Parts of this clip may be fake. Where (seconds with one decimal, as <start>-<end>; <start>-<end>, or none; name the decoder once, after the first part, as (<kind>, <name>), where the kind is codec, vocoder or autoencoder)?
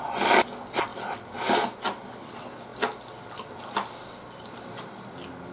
none